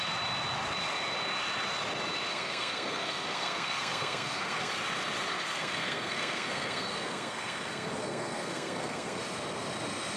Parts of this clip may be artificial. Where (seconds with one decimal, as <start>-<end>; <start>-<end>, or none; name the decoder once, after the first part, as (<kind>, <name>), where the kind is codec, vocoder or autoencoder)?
2.3-4.7 (codec, SNAC); 5.3-9.2